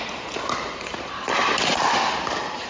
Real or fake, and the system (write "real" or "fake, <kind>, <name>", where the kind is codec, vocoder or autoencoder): real